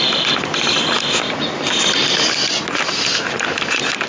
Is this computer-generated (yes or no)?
no